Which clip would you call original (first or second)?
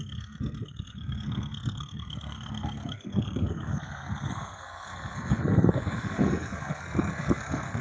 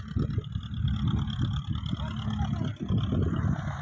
second